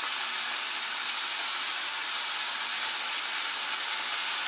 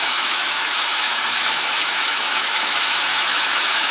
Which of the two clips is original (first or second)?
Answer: first